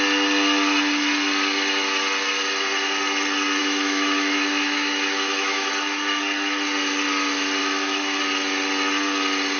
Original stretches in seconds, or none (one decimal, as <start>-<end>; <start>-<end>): 0.0-3.6; 5.7-7.6; 8.2-9.6